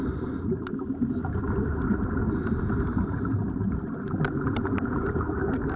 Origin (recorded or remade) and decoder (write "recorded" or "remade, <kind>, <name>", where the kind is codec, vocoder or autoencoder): recorded